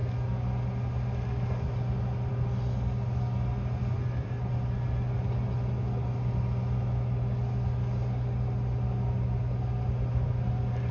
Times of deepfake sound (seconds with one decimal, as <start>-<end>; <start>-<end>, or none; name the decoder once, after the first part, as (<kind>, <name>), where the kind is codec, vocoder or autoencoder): none